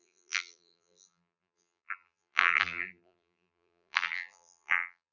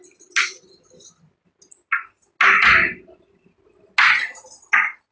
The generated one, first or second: first